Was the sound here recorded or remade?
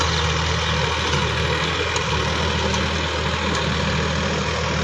recorded